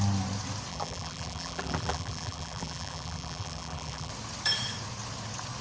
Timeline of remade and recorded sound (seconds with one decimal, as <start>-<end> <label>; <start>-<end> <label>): 0.0-0.7 recorded; 0.7-4.1 remade; 4.1-5.6 recorded